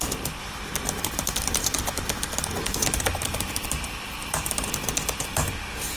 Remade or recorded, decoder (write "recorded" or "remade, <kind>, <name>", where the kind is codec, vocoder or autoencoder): recorded